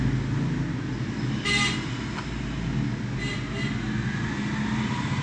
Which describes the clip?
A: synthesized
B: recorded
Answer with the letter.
B